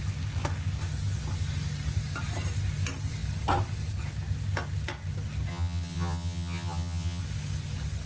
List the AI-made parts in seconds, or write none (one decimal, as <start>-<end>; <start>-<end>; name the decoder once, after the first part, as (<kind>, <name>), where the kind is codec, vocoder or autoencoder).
5.5-7.2 (vocoder, HiFi-GAN)